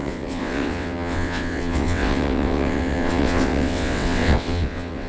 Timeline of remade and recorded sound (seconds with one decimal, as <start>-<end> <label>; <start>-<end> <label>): 0.0-5.1 remade